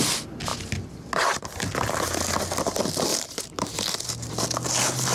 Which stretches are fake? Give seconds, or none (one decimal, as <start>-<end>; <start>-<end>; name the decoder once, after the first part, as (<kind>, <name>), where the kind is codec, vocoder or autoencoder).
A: 3.1-4.3 (vocoder, BigVGAN v2)